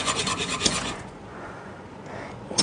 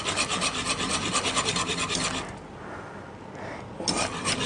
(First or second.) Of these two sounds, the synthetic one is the first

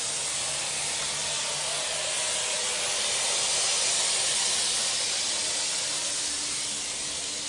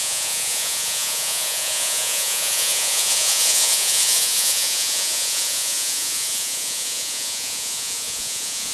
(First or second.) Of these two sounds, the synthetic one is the second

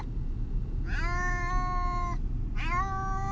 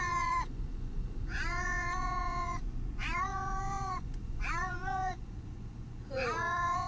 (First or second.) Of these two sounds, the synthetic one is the second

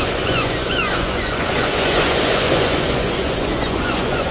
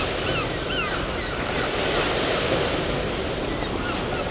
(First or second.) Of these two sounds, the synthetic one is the first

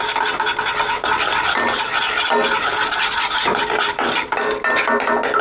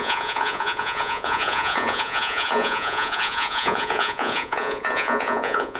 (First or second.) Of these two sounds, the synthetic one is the second